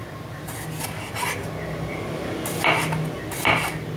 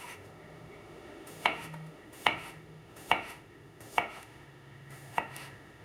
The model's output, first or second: second